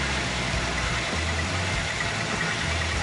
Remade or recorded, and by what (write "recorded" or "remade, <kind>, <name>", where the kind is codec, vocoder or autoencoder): recorded